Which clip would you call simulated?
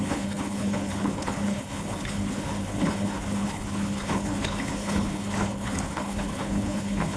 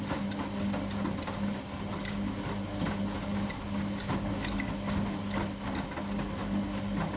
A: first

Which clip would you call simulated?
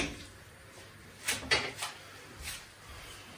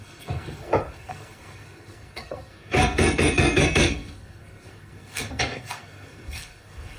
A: second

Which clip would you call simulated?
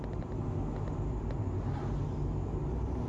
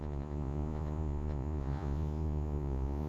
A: second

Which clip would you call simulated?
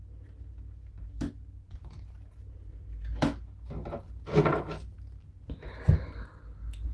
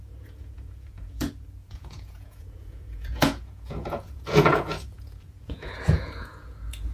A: second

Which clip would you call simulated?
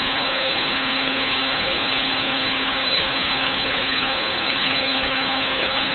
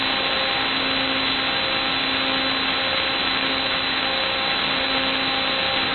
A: first